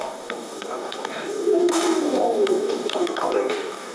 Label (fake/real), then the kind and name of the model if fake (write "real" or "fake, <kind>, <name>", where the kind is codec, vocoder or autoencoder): fake, codec, DAC